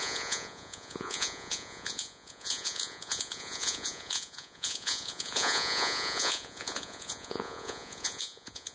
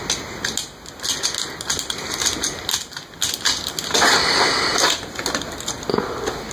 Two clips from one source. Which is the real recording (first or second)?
second